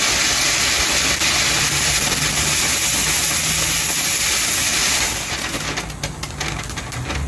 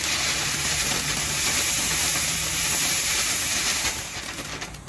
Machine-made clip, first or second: second